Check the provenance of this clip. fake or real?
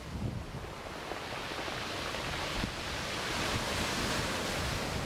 real